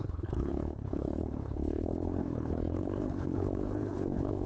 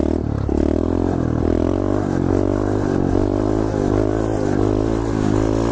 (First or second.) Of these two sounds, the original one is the second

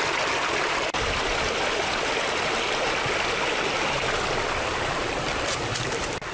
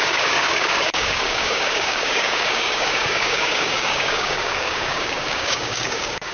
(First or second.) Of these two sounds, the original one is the first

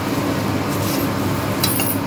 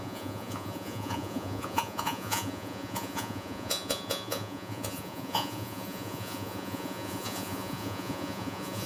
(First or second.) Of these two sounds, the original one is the first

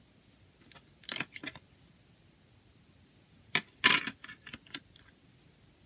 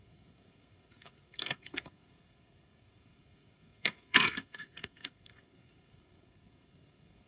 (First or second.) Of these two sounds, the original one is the first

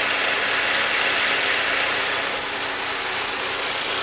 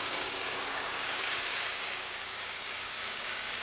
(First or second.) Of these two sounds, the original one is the first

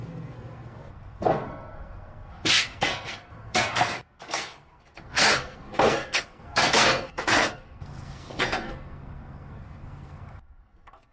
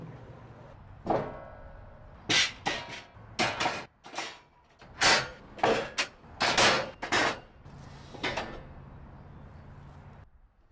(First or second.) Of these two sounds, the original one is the second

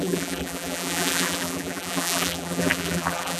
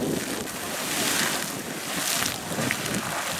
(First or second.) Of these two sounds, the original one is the second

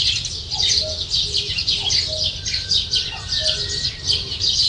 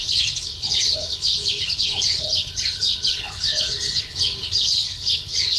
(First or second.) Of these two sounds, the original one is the first